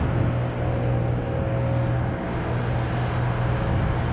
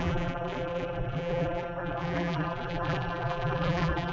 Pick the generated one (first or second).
second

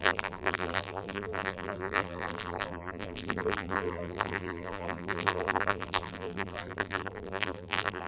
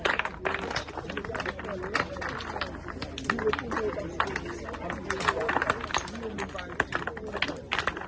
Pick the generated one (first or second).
first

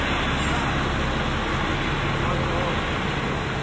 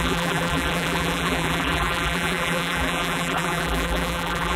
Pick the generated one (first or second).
second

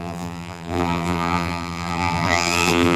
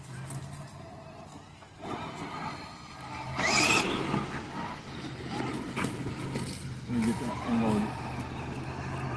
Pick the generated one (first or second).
first